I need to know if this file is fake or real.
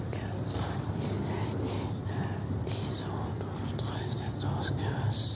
real